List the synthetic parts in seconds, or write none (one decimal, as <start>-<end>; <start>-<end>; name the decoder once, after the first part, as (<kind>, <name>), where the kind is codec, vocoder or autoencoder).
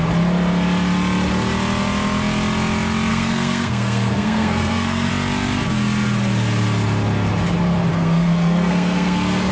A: 3.1-5.1 (codec, SNAC); 7.9-9.5